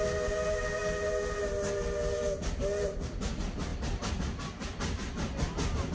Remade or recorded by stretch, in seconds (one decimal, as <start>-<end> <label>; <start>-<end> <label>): 0.0-5.9 recorded